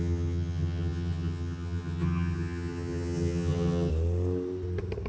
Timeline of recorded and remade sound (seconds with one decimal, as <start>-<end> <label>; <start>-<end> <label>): 0.0-3.9 remade; 3.9-5.1 recorded